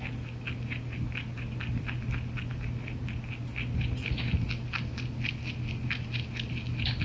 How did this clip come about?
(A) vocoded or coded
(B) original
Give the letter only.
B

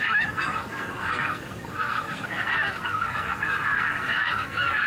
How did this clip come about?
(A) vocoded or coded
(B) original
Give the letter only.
A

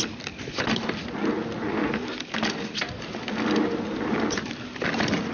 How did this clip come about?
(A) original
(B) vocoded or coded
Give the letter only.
A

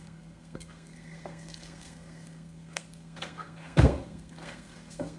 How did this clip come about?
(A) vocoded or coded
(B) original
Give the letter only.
A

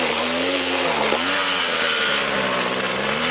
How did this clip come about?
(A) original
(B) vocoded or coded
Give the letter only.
A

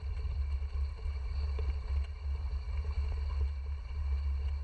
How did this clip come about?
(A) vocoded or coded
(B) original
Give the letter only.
B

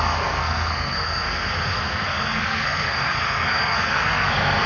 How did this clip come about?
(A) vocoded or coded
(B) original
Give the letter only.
A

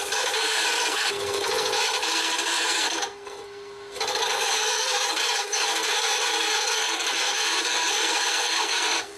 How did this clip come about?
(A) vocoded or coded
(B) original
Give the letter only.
A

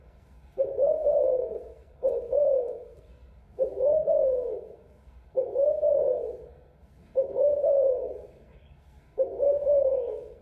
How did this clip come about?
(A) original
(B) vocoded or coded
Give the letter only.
B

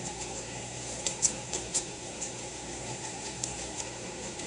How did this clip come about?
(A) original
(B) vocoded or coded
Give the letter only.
B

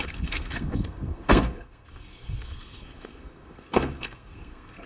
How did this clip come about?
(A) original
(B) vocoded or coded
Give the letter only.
B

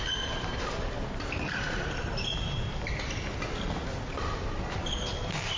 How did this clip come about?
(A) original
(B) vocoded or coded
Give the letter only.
A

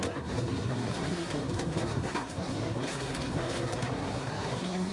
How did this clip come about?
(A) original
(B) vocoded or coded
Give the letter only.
B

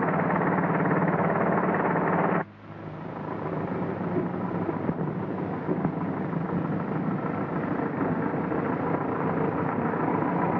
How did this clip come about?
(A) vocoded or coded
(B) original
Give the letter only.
B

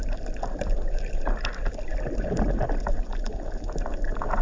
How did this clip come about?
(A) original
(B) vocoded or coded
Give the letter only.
A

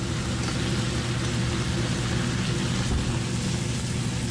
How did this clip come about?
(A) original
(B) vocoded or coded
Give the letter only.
A